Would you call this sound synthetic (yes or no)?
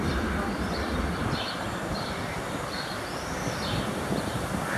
yes